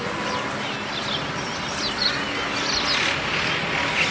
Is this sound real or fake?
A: real